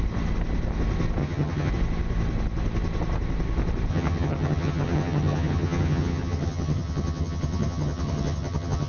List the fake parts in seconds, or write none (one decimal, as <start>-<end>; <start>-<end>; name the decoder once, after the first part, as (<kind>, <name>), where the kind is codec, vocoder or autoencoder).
1.2-1.7 (vocoder, HiFi-GAN); 3.9-8.9